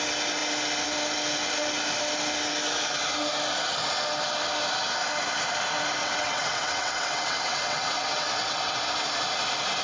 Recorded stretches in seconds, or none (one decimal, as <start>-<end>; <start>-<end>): 0.0-6.0; 8.8-9.8